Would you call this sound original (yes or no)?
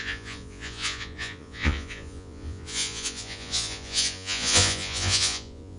no